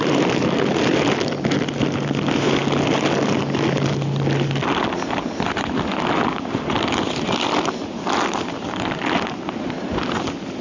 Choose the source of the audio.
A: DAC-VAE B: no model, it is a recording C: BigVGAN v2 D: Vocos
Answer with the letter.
B